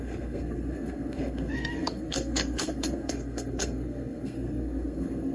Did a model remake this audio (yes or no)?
yes